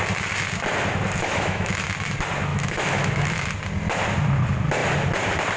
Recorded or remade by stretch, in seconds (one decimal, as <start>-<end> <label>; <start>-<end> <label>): 0.0-1.2 recorded; 1.2-1.8 remade; 1.8-2.5 recorded; 2.5-3.5 remade; 3.5-5.6 recorded